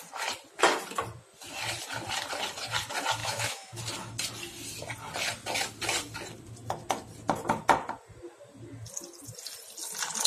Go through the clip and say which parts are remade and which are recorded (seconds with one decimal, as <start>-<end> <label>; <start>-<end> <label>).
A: 0.0-3.2 recorded; 3.2-3.8 remade; 3.8-10.3 recorded